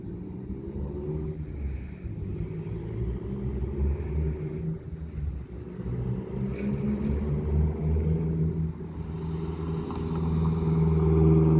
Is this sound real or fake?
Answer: real